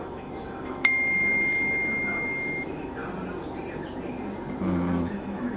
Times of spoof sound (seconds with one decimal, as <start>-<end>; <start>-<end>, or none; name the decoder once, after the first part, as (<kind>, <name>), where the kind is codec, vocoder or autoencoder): 0.0-3.0 (autoencoder, DAC-VAE); 5.1-5.6